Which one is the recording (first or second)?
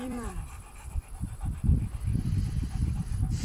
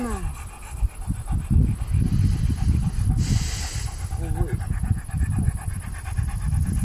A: second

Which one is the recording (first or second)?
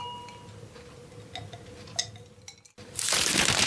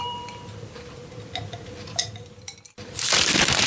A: first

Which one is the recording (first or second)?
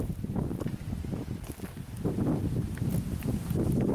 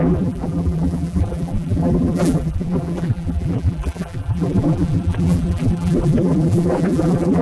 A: first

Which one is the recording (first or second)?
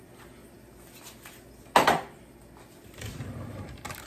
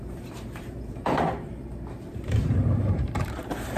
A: first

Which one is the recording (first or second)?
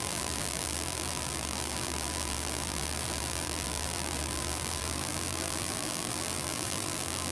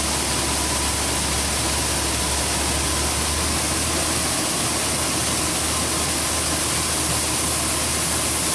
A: second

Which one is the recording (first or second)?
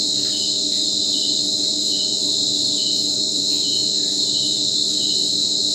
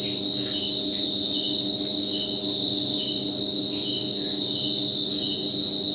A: second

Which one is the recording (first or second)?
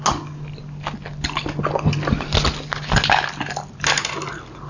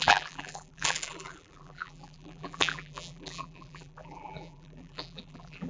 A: first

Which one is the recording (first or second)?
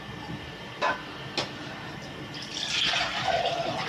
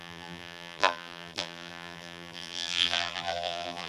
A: first